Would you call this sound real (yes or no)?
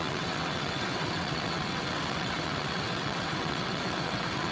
no